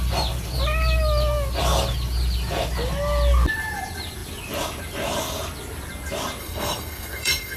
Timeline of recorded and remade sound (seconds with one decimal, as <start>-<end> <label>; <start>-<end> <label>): 0.0-6.4 recorded; 6.4-7.6 remade